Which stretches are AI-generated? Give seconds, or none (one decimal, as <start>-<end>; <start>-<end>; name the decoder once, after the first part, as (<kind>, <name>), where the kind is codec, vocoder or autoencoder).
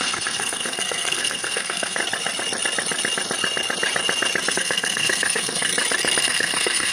0.0-2.0 (codec, SNAC); 4.5-5.7; 6.2-6.9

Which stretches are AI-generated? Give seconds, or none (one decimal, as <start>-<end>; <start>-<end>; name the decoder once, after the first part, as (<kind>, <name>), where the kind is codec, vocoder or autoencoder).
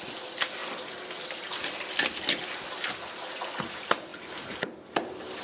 none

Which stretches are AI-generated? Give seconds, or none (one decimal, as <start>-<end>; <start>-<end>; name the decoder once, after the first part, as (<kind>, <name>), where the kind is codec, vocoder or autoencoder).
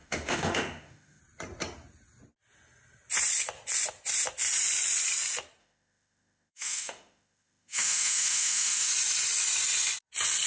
0.0-1.2 (autoencoder, DAC-VAE); 5.6-8.9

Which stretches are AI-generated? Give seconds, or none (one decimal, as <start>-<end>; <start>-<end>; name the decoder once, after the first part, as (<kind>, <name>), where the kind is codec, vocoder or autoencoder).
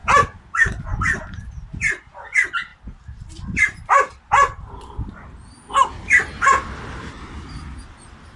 none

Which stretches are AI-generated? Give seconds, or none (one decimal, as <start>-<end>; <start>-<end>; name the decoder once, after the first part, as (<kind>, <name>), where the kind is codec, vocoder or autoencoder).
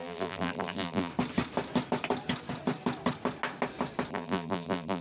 0.0-1.1 (vocoder, BigVGAN v2); 4.1-5.0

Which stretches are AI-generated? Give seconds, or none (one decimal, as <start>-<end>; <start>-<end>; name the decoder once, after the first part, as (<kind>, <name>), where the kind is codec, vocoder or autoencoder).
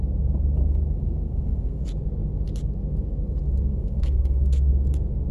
0.6-1.8 (codec, SNAC); 3.7-4.7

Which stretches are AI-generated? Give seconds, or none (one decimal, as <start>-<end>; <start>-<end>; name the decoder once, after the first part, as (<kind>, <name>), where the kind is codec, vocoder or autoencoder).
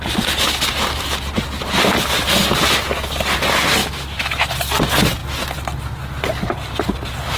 3.8-4.5 (autoencoder, DAC-VAE)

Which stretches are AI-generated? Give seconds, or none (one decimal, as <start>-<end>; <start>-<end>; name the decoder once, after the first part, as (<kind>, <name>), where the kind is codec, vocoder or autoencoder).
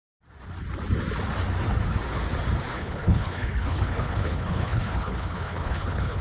2.7-6.2 (codec, HILCodec)